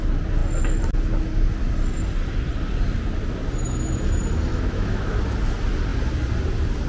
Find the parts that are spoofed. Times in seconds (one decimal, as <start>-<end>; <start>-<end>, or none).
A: 4.5-5.2